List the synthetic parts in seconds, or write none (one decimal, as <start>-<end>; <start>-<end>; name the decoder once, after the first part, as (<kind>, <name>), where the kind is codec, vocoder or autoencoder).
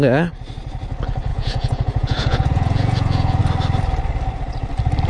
1.3-3.4 (vocoder, Vocos)